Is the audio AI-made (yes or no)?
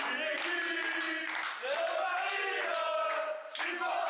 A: no